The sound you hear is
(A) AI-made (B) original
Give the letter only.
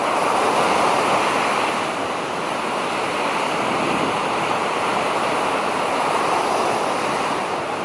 B